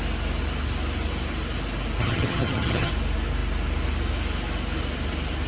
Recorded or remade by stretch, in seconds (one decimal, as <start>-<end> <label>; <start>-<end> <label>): 0.0-2.0 recorded; 2.0-2.9 remade; 2.9-5.5 recorded